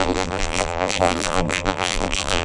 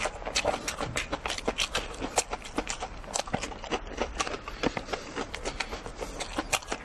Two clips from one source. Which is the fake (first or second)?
first